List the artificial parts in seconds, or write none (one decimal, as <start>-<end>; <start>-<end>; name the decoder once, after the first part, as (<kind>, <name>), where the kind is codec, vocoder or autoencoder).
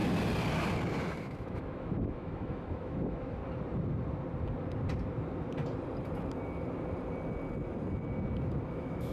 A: 1.2-3.4 (autoencoder, DAC-VAE); 8.7-9.1